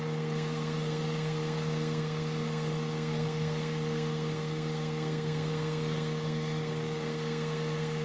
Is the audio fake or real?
fake